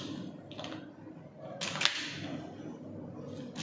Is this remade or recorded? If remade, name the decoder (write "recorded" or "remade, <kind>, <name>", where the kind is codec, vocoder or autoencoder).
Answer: recorded